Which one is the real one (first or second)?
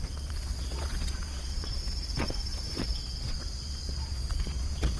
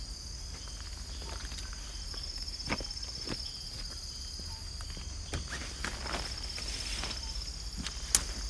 second